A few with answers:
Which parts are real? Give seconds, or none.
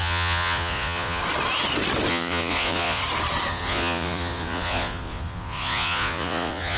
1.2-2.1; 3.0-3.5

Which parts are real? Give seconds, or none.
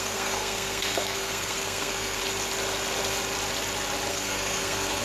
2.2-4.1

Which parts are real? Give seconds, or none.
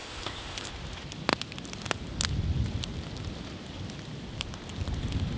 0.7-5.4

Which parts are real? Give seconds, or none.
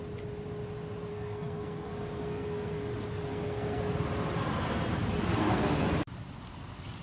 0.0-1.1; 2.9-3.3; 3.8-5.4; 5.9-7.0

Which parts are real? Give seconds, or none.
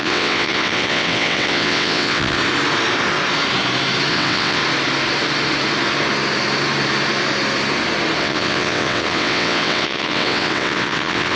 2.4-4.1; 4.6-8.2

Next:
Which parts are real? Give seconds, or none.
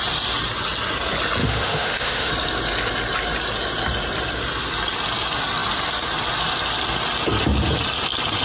0.0-1.4; 2.3-8.4